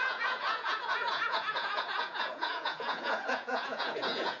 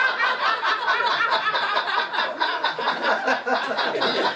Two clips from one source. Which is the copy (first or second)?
first